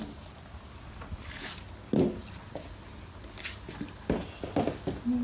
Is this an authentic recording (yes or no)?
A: yes